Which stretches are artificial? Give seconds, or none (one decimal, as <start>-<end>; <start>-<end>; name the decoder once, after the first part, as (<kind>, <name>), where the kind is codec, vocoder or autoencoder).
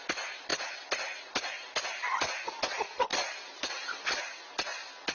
3.1-4.2 (vocoder, BigVGAN v2)